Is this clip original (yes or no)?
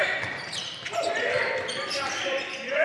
no